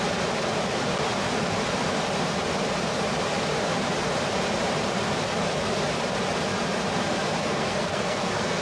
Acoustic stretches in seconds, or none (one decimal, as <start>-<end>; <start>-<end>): 0.0-7.4